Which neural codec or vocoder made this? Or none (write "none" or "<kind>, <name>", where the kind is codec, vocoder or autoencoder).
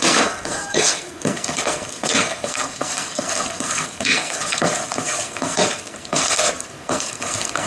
codec, SNAC